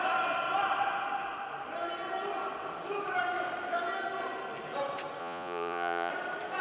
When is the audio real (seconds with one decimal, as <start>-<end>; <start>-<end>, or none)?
0.0-5.2; 6.1-6.6